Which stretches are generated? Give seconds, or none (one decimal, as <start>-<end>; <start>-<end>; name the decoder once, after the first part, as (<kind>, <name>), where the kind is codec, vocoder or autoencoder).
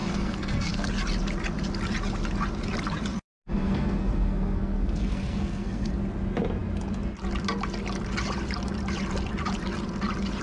0.0-0.9 (codec, SNAC); 3.1-5.9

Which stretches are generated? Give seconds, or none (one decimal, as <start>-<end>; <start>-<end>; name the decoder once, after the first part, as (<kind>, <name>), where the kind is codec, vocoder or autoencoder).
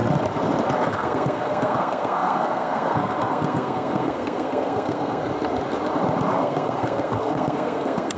0.9-5.2 (codec, SNAC); 6.3-8.2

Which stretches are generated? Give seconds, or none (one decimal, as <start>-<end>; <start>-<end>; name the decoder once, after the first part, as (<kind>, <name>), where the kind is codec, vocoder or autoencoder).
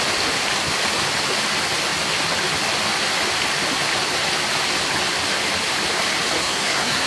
6.4-7.1 (codec, SNAC)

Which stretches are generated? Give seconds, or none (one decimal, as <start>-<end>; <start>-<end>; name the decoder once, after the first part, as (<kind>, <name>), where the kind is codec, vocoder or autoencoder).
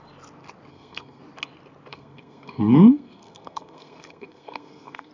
0.7-1.2 (codec, SNAC); 1.9-5.1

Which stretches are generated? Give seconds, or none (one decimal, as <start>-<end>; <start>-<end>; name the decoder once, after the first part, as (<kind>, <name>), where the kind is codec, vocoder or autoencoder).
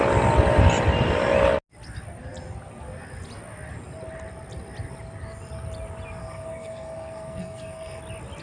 6.2-8.0 (codec, SNAC)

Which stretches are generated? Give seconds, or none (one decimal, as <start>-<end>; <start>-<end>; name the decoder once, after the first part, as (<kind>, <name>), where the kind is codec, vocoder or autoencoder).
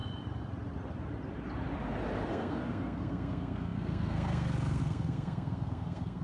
2.3-6.2 (codec, SNAC)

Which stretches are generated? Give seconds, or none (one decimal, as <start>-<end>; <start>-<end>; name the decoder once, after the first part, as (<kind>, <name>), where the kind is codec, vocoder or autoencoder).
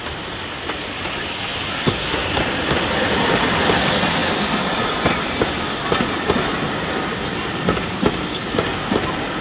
1.7-2.3 (codec, SNAC)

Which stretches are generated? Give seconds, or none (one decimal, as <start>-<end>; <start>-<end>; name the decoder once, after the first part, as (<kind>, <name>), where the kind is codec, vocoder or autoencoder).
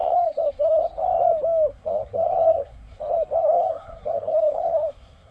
0.0-0.9 (codec, SNAC); 1.7-3.0; 3.4-5.3